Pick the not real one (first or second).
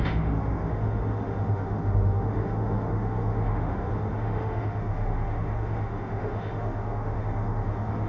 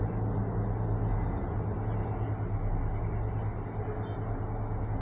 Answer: first